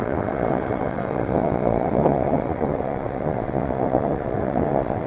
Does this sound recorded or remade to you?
remade